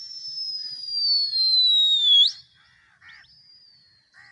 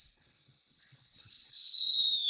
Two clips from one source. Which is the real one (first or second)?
first